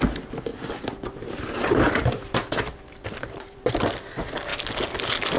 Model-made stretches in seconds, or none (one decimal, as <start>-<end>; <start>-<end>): 0.5-3.7